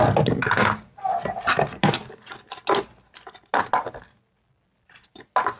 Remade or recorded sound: recorded